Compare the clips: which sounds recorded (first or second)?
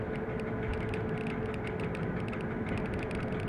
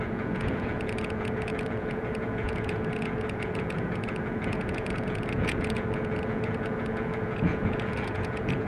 first